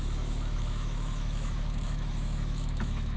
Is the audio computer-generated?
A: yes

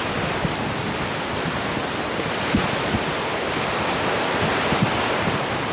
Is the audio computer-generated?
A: no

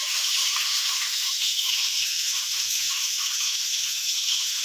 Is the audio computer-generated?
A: yes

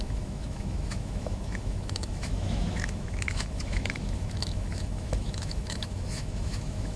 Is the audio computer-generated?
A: yes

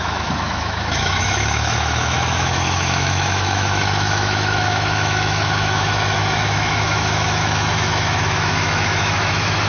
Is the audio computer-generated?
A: yes